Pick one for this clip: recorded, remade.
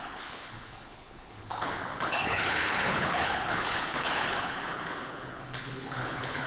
remade